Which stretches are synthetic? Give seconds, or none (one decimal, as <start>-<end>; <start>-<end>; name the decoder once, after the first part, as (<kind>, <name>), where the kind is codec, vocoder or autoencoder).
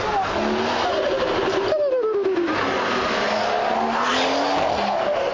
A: none